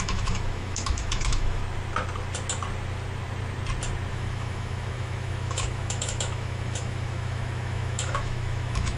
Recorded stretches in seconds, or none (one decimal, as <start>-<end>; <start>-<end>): 1.6-4.1